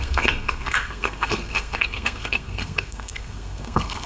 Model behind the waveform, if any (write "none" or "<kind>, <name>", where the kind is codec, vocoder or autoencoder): codec, SNAC